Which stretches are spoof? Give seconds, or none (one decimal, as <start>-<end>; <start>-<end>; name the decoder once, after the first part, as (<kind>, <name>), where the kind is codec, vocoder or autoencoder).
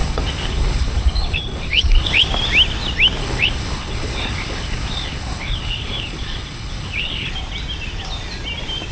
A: 0.0-2.3 (codec, HILCodec); 3.2-7.3